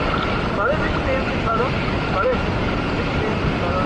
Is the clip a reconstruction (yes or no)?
no